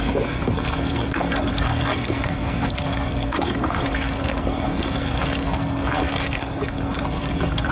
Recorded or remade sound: remade